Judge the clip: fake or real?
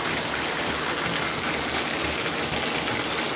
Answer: real